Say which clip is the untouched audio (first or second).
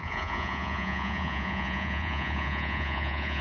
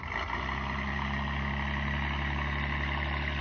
second